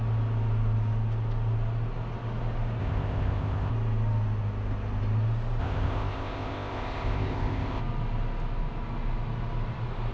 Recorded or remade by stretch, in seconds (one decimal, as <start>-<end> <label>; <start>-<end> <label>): 0.0-2.8 recorded; 2.8-3.7 remade; 3.7-5.6 recorded; 5.6-7.8 remade; 7.8-10.1 recorded